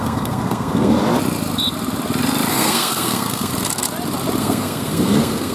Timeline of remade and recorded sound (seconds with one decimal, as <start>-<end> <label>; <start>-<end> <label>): 0.0-1.0 remade; 1.0-2.5 recorded; 2.5-3.5 remade; 3.5-4.4 recorded; 4.4-5.5 remade